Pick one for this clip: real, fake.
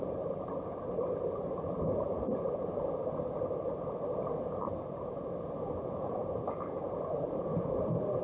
real